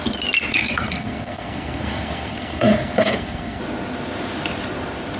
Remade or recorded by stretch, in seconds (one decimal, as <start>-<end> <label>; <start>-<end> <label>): 0.0-0.5 recorded; 0.5-3.6 remade; 3.6-5.2 recorded